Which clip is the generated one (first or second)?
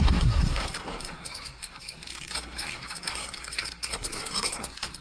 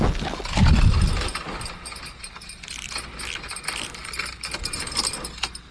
first